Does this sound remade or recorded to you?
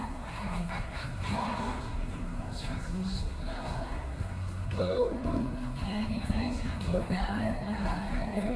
remade